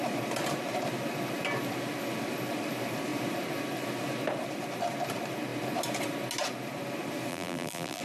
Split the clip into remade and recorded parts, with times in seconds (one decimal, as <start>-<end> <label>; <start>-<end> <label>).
0.0-7.3 recorded; 7.3-8.0 remade